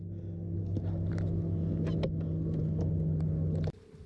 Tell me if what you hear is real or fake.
real